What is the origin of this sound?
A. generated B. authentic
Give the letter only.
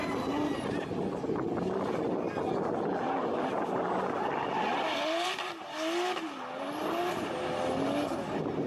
B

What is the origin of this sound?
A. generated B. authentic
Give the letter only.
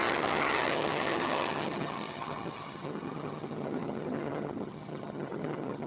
A